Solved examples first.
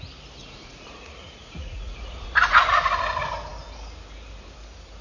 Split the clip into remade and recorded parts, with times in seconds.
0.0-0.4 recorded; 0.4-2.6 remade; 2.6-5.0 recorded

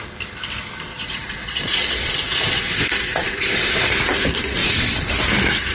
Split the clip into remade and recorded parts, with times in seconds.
0.0-0.9 recorded; 0.9-3.9 remade; 3.9-4.6 recorded; 4.6-5.1 remade; 5.1-5.7 recorded

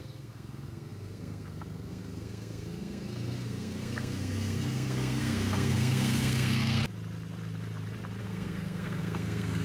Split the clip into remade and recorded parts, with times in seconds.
0.0-6.8 remade; 6.8-8.2 recorded; 8.2-9.6 remade

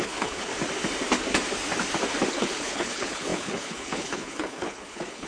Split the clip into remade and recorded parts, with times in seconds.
0.0-0.5 remade; 0.5-2.3 recorded; 2.3-5.3 remade

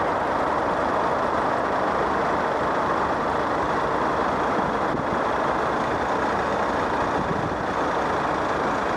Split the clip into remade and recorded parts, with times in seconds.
0.0-9.0 recorded

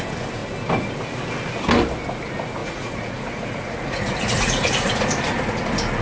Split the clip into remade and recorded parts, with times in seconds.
0.0-2.6 recorded; 2.6-4.9 remade; 4.9-6.0 recorded

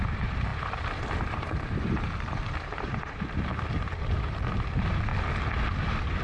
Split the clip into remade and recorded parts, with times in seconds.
0.0-5.1 remade; 5.1-5.8 recorded; 5.8-6.2 remade